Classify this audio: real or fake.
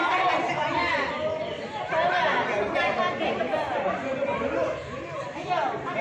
real